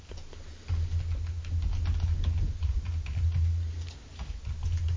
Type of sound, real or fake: real